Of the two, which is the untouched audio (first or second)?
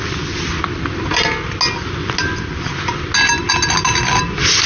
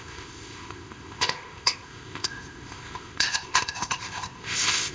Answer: first